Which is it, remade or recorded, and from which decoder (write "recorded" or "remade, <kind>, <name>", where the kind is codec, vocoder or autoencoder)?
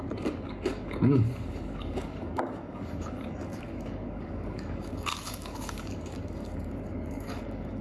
remade, codec, DAC